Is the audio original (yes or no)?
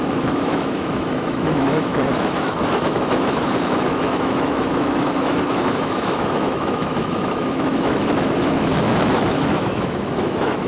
no